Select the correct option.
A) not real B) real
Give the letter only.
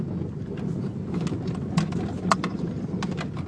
B